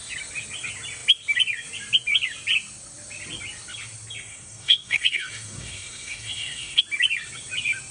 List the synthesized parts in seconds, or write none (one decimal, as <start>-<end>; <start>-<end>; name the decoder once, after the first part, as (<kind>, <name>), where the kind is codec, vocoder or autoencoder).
4.3-6.8 (codec, SNAC)